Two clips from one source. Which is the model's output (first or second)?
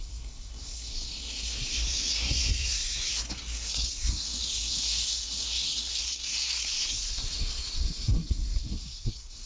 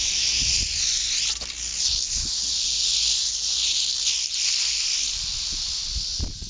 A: first